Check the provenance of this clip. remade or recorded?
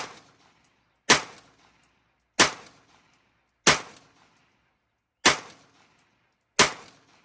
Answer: recorded